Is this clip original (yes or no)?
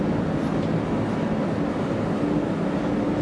yes